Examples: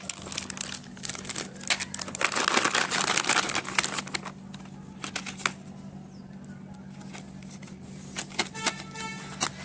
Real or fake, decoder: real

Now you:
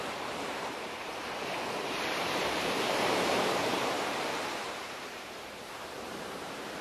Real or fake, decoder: fake, vocoder, BigVGAN v2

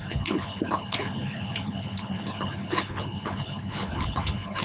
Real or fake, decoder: fake, codec, HILCodec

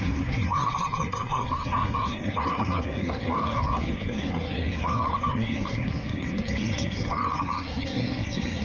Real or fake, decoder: fake, codec, SNAC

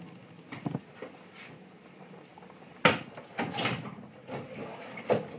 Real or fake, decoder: real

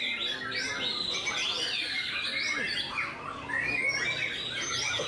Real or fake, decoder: real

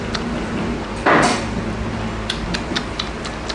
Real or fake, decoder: real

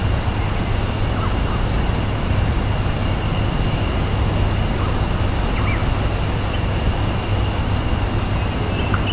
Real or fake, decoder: real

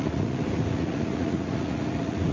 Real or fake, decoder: fake, vocoder, Vocos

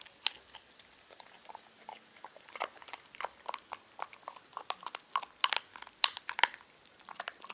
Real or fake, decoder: real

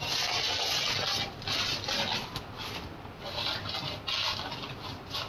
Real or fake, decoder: real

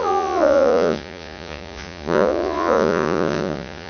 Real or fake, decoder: fake, vocoder, Vocos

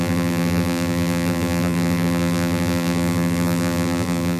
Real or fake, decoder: fake, vocoder, BigVGAN v2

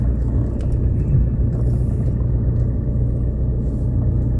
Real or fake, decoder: real